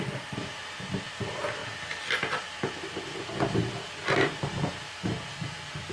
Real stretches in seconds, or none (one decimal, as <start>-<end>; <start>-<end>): 0.0-0.4; 1.2-5.9